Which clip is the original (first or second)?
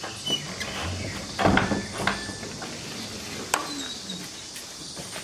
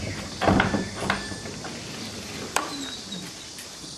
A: first